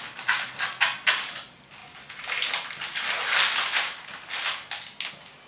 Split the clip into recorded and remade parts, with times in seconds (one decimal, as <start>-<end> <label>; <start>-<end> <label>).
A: 0.0-5.5 recorded